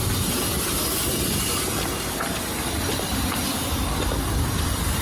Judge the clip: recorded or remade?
recorded